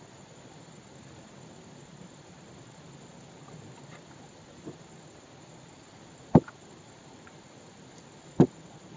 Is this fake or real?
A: real